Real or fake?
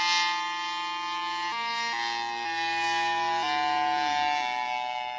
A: real